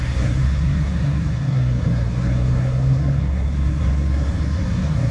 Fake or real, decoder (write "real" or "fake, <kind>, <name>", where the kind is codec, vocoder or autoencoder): fake, codec, SNAC